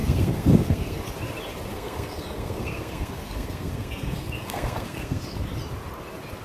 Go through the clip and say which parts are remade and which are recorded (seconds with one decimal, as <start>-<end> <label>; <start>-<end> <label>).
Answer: 0.0-1.0 remade; 1.0-1.7 recorded; 1.7-5.5 remade; 5.5-6.4 recorded